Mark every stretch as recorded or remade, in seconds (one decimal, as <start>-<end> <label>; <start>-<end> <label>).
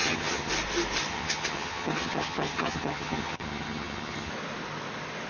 0.0-0.5 remade; 0.5-1.1 recorded; 1.1-4.3 remade; 4.3-5.3 recorded